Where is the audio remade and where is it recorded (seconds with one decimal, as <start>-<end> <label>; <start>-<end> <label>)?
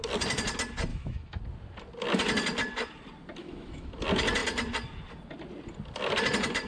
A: 0.0-0.9 recorded; 0.9-1.4 remade; 1.4-3.4 recorded; 3.4-3.9 remade; 3.9-6.7 recorded